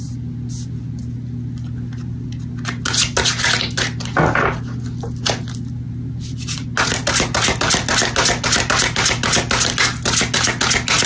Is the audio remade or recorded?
recorded